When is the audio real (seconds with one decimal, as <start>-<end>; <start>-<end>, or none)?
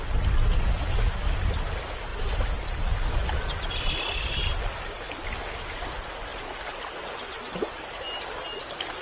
0.0-9.0